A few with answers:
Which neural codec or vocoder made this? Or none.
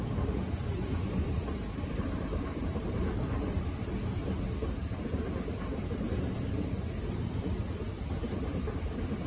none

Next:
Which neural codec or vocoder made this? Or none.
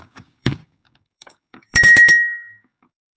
codec, DAC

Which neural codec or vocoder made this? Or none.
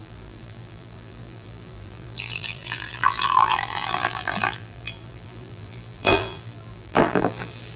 vocoder, BigVGAN v2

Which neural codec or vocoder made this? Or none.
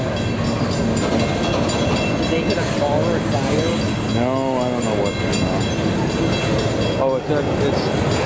none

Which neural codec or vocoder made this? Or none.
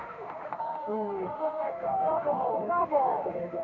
autoencoder, DAC-VAE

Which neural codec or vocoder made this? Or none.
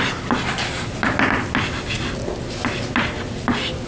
none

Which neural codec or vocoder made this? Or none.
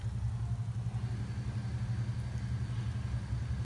none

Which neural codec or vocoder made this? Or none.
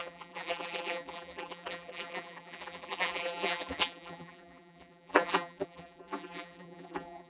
vocoder, BigVGAN v2